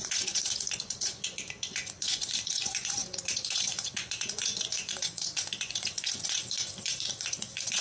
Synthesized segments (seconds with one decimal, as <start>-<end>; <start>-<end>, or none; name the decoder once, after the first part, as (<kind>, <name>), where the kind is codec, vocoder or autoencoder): 0.0-6.7 (vocoder, Vocos); 7.3-7.8